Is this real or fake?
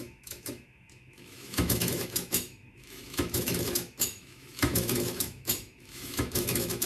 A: fake